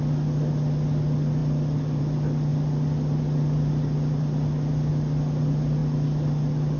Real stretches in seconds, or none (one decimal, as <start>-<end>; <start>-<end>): 0.0-1.4; 2.0-2.5; 4.9-6.8